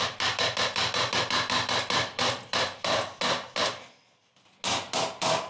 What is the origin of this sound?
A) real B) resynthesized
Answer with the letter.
A